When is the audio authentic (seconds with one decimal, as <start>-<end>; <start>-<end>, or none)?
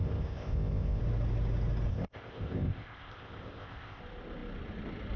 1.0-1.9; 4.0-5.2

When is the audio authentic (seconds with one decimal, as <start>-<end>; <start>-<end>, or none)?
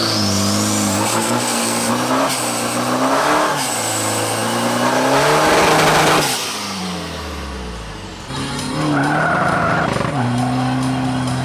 0.0-1.1; 1.9-11.4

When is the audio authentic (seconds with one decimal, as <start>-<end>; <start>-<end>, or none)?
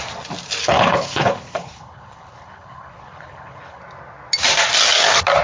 0.0-0.6; 3.8-5.4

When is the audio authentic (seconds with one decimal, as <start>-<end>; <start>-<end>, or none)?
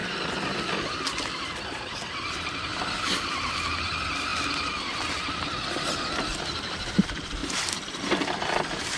0.0-7.4; 8.0-9.0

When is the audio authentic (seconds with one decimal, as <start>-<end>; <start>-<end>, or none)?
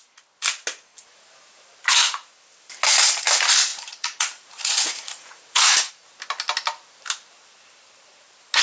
0.0-3.7; 5.9-8.6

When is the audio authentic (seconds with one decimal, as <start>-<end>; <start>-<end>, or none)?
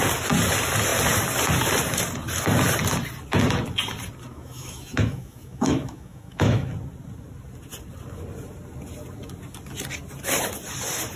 0.0-4.3; 6.7-11.2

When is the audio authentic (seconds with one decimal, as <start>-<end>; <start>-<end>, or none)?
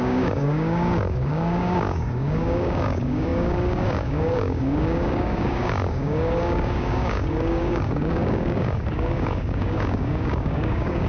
none